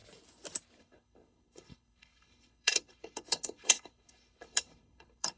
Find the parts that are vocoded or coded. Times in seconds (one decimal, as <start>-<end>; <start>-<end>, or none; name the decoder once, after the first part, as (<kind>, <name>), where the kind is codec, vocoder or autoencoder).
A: 0.8-5.4 (codec, HILCodec)